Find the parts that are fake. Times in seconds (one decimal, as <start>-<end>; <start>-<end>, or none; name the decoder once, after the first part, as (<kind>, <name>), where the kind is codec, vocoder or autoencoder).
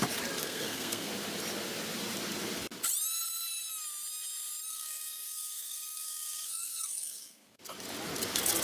0.4-1.1 (codec, SNAC); 4.7-7.6